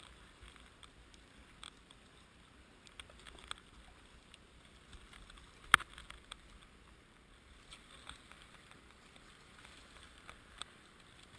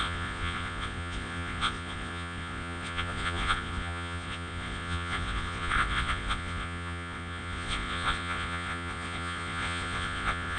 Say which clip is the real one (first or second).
first